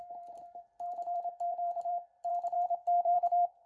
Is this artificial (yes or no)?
yes